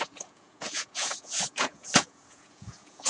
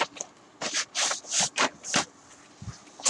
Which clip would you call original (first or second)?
second